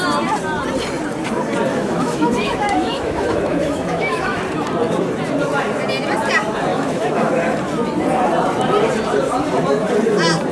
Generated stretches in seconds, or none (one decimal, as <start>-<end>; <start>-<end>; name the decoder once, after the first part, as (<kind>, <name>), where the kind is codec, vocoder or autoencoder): 1.7-4.4 (autoencoder, DAC-VAE); 6.7-7.3